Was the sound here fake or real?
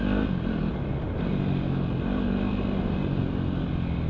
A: real